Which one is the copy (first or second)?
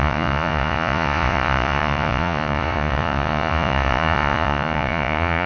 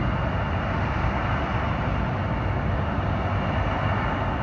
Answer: first